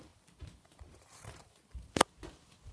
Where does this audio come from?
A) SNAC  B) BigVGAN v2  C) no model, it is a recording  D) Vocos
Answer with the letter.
C